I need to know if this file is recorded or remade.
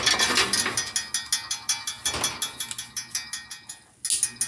recorded